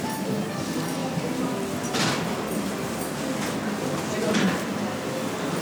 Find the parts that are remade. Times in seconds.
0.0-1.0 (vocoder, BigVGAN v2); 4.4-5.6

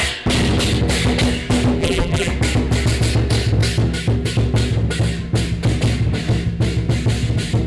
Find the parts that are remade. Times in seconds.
1.8-2.3 (vocoder, BigVGAN v2)

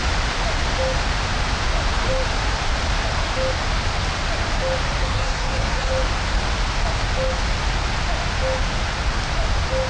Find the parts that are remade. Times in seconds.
5.0-5.9 (codec, SNAC)

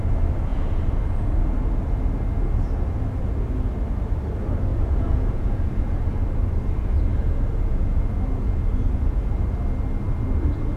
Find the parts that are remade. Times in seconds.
4.7-6.1 (vocoder, Vocos); 7.1-9.3

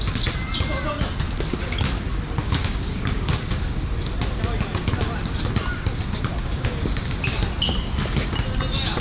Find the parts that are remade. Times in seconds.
2.4-3.3 (codec, DAC); 6.4-7.1